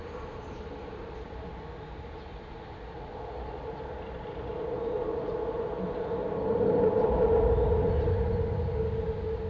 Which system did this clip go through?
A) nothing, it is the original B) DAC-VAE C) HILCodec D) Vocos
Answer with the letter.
A